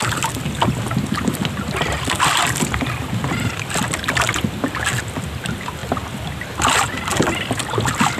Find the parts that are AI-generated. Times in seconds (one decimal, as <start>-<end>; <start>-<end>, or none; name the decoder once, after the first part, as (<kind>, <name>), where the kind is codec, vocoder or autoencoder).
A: none